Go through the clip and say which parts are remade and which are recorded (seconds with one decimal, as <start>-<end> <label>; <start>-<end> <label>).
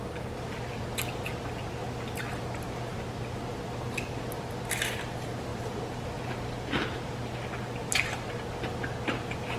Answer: 0.0-9.6 recorded